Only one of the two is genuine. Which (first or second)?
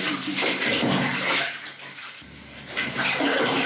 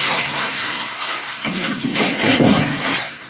first